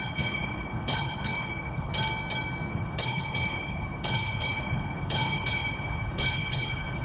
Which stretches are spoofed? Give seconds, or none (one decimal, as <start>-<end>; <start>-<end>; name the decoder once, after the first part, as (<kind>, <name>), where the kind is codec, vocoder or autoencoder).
0.0-1.9 (codec, HILCodec); 2.7-7.0